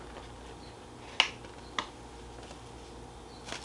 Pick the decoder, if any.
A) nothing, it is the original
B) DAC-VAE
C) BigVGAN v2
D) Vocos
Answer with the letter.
A